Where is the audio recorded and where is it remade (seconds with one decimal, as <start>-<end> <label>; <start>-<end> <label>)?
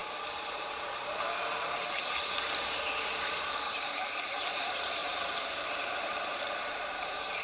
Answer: 0.0-7.4 remade